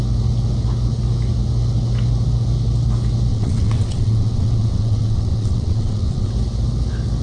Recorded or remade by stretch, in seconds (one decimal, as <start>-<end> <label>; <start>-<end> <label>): 0.0-3.3 recorded; 3.3-6.3 remade; 6.3-7.2 recorded